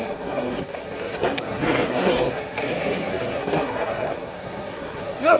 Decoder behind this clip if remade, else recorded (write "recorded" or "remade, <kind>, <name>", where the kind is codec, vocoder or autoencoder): remade, codec, SNAC